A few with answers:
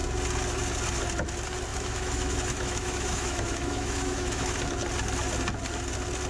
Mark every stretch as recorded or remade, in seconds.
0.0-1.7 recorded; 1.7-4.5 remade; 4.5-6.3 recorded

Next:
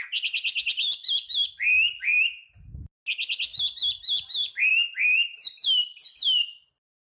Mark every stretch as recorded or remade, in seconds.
0.0-7.1 recorded